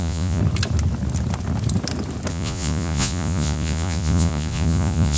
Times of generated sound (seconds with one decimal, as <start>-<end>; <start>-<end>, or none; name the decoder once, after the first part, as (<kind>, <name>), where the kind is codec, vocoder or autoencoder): 0.0-0.4 (vocoder, Vocos); 2.3-5.2